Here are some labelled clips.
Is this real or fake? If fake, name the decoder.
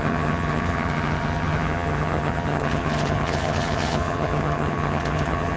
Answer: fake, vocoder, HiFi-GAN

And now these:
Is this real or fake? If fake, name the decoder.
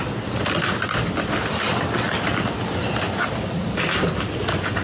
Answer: real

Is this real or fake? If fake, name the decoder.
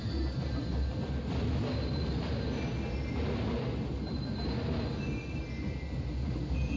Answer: real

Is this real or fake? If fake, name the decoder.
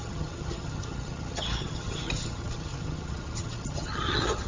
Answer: fake, vocoder, HiFi-GAN